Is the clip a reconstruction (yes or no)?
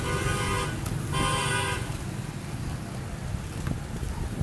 no